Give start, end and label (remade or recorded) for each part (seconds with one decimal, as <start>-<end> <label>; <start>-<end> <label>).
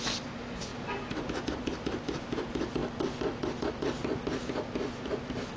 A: 0.0-5.6 recorded